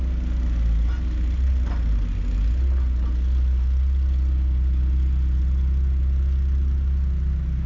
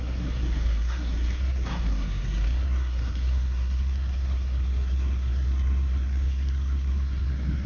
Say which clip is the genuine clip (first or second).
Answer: first